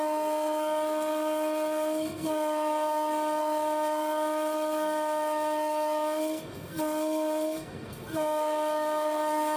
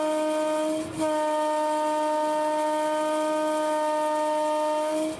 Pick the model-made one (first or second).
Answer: first